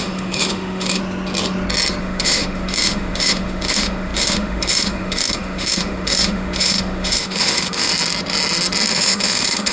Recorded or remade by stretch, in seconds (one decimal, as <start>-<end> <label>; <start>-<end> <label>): 0.0-1.0 remade; 1.0-2.0 recorded; 2.0-7.9 remade; 7.9-8.9 recorded; 8.9-9.7 remade